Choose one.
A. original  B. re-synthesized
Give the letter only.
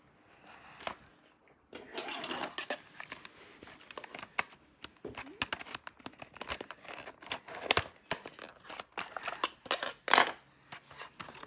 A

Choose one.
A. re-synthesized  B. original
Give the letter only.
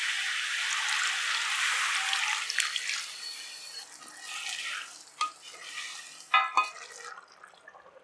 B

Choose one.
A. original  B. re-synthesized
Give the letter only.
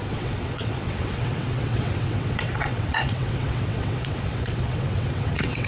B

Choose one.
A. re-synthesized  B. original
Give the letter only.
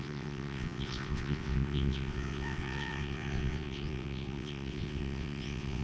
A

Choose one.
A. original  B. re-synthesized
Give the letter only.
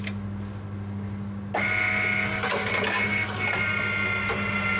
A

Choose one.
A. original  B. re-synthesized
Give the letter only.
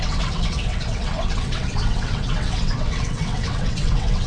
B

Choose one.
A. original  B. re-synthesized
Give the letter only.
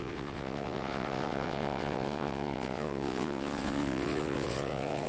B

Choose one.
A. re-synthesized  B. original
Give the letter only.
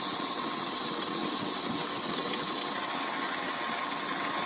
A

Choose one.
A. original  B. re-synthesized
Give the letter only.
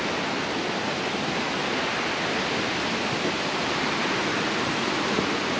A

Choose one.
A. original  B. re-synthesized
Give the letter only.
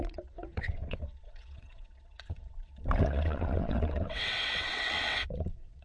B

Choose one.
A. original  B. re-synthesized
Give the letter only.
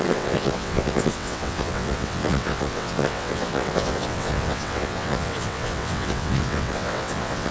B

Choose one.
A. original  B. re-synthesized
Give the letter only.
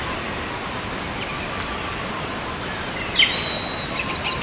A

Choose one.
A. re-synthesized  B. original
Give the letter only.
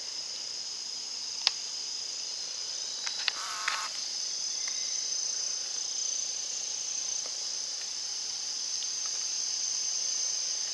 B